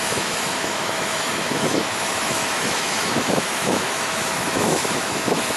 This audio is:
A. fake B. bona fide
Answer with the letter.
A